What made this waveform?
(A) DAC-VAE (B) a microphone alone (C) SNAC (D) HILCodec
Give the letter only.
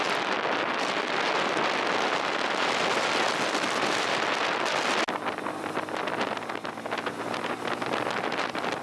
B